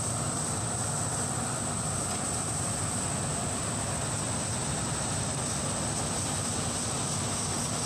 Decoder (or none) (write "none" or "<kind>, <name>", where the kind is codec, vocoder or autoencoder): none